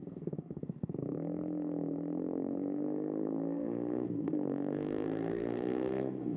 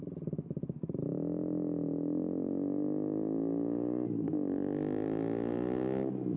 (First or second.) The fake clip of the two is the first